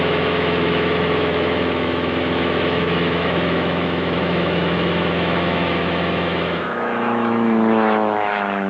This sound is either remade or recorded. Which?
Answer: remade